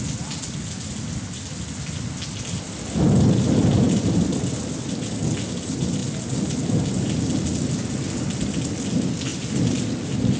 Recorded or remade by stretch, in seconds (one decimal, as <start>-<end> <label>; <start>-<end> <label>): 0.0-10.4 recorded